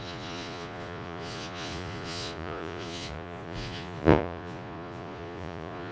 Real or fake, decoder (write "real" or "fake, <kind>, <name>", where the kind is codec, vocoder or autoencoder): fake, vocoder, Vocos